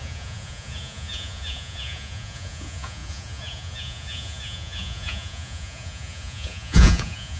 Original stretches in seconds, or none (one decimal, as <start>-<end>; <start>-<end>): none